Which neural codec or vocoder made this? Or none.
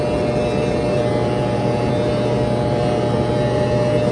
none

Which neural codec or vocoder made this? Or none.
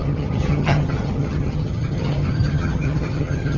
vocoder, HiFi-GAN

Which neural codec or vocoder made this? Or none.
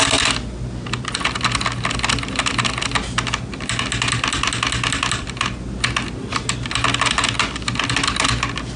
none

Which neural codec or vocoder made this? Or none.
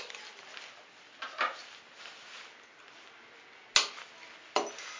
none